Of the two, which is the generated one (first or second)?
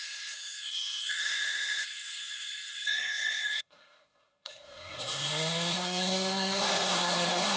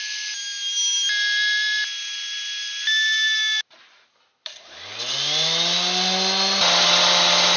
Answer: first